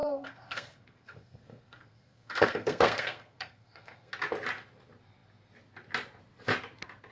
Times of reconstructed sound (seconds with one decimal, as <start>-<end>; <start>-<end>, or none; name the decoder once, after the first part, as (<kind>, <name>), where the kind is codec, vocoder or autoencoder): 0.0-4.1 (codec, SNAC)